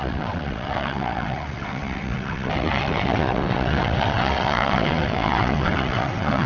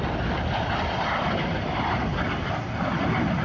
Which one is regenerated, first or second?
first